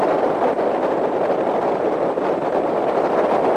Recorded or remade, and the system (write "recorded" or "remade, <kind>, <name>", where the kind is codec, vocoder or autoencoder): recorded